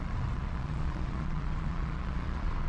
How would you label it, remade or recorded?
remade